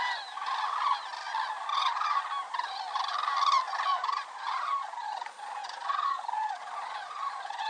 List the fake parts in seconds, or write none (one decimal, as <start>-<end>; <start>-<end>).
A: 1.7-2.2; 3.9-7.7